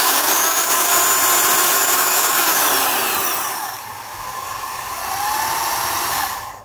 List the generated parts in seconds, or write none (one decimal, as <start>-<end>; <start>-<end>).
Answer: 0.0-0.9; 1.6-2.6; 3.5-5.0; 6.1-6.6